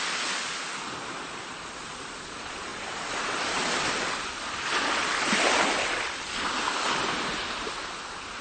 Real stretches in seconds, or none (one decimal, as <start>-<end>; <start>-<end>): 0.0-8.4